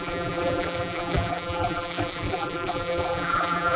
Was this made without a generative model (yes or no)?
no